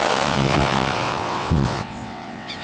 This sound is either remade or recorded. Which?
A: remade